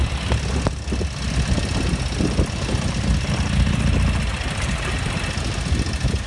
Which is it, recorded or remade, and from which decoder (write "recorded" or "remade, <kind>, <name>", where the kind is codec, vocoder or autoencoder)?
recorded